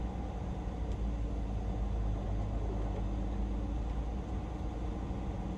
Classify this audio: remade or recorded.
recorded